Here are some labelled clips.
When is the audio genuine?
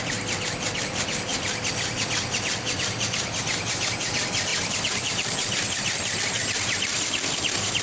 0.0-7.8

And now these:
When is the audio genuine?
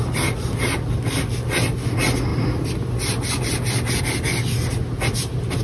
0.0-5.6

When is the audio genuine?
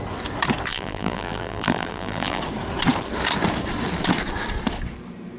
0.0-0.7; 2.4-5.4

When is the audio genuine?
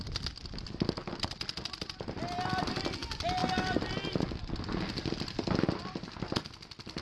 0.0-7.0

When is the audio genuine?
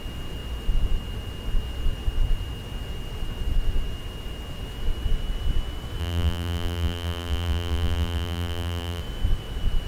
0.0-6.0; 9.0-9.9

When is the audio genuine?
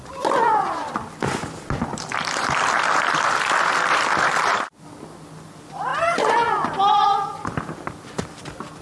none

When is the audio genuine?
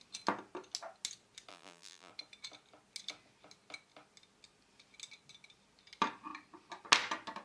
0.0-1.5; 2.1-7.4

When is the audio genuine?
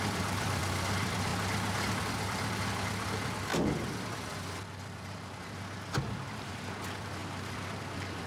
3.5-4.1